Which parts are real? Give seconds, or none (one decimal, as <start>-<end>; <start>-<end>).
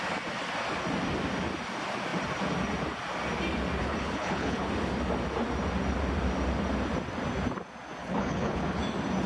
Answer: 0.0-3.8; 4.7-8.0; 8.8-9.3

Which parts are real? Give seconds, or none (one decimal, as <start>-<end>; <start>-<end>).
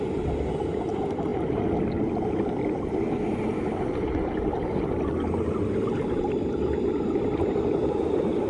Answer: 0.0-8.5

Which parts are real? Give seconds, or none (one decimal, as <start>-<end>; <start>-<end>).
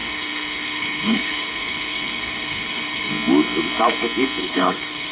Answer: 3.1-4.4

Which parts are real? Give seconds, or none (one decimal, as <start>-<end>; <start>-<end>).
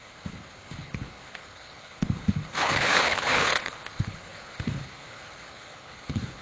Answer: none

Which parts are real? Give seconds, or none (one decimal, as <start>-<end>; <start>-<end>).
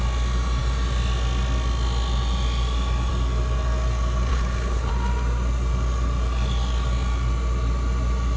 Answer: 0.0-4.3; 4.9-8.4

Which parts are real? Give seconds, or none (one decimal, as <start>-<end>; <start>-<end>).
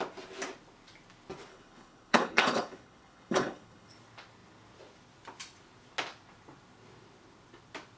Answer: 0.0-1.5; 3.9-8.0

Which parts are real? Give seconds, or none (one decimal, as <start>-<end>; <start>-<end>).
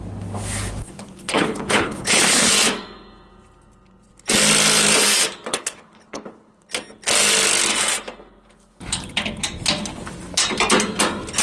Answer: 0.0-0.8; 2.5-5.5; 6.7-11.4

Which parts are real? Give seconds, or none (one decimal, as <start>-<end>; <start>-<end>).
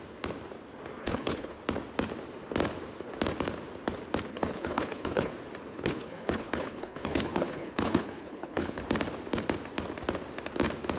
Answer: 0.0-1.0; 1.6-4.3; 5.3-5.7; 8.8-11.0